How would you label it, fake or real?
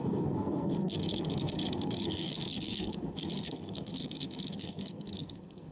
fake